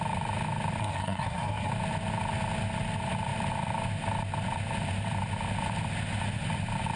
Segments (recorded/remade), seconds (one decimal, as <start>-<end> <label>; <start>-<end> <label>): 0.0-0.8 recorded; 0.8-1.7 remade; 1.7-7.0 recorded